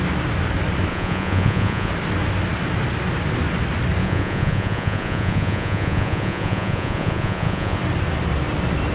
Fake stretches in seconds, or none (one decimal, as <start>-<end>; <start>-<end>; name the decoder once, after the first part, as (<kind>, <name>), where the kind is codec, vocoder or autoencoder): 0.9-1.9 (vocoder, Vocos); 4.0-7.8